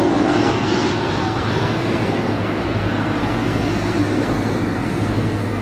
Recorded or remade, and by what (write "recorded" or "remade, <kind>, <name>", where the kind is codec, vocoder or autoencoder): remade, codec, SNAC